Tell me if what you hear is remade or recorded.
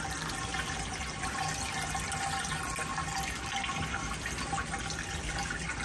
recorded